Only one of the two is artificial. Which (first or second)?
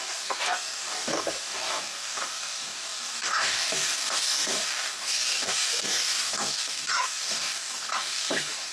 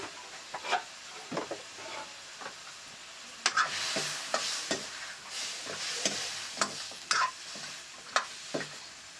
first